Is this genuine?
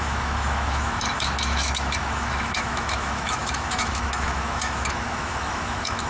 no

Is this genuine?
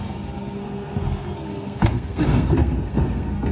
no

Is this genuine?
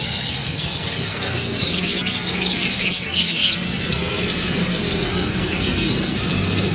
no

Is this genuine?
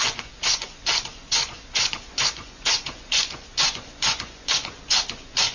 no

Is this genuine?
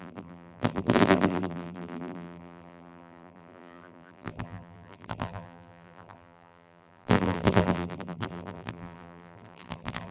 no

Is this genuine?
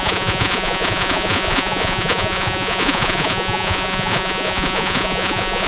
no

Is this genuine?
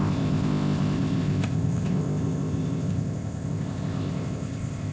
no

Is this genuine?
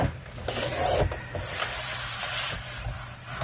no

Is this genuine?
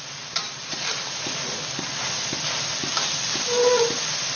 yes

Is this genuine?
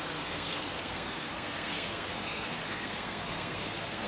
no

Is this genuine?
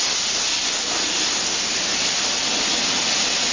yes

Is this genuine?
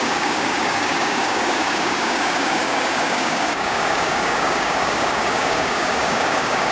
no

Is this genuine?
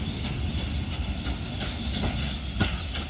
yes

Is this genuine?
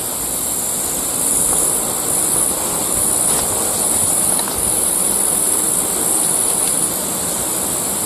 yes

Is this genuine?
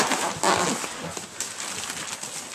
yes